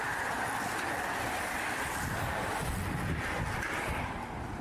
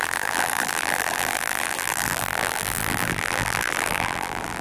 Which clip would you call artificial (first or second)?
second